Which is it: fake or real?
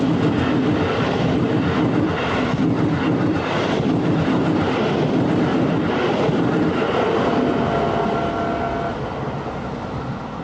real